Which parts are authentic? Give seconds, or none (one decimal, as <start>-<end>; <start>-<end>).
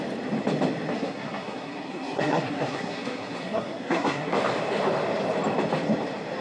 0.0-0.9; 4.4-6.4